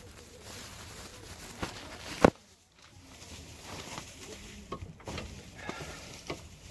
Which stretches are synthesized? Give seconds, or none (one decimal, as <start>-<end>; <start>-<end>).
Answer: 0.0-1.1; 2.2-6.7